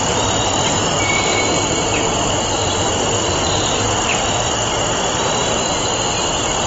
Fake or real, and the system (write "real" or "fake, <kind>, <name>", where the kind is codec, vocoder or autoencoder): fake, vocoder, BigVGAN v2